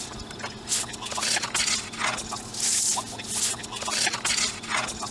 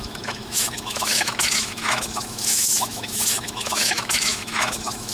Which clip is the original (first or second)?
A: first